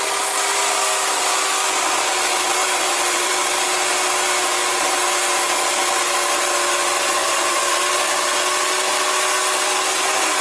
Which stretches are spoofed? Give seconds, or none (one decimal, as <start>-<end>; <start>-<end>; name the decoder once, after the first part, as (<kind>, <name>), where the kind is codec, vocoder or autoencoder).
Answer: 2.6-3.3 (vocoder, BigVGAN v2); 7.2-7.8